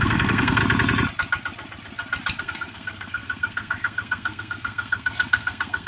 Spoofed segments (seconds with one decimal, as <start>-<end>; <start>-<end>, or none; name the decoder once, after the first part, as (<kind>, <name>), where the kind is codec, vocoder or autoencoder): 0.0-0.6 (codec, SNAC); 2.4-5.9